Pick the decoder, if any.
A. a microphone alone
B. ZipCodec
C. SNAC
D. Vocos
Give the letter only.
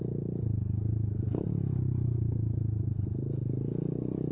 A